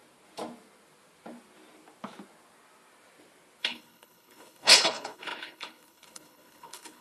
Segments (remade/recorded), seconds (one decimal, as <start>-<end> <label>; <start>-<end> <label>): 0.0-3.6 recorded; 3.6-7.0 remade